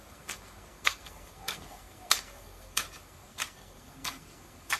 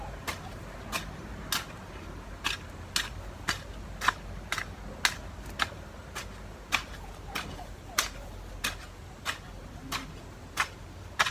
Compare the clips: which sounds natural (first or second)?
second